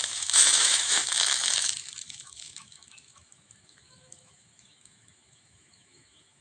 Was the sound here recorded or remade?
remade